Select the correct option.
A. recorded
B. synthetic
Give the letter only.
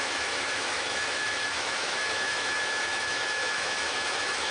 B